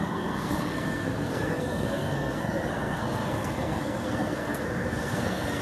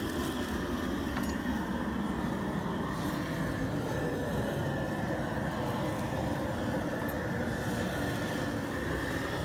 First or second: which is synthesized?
first